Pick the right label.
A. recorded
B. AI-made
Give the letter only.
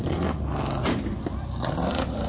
A